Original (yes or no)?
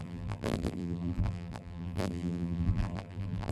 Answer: no